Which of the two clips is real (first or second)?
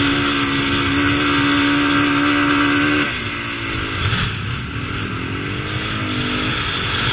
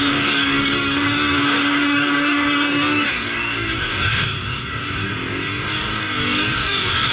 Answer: first